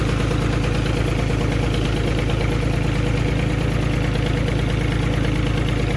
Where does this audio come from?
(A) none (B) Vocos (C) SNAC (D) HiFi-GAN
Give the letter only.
A